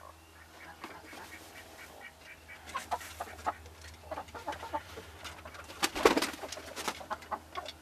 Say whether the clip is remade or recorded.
recorded